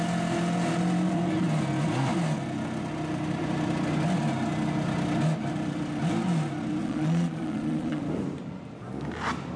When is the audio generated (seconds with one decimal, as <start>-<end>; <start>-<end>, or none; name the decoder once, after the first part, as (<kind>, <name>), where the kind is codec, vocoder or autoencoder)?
6.8-8.0 (vocoder, Vocos)